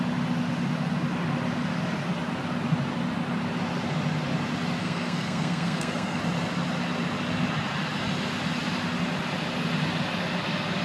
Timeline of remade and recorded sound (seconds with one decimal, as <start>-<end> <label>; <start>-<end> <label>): 0.0-4.8 recorded; 4.8-6.2 remade; 6.2-10.8 recorded